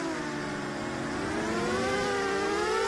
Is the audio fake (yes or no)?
no